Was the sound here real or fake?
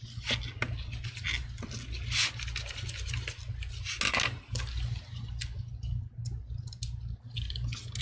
real